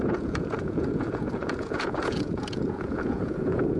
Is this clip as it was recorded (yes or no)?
no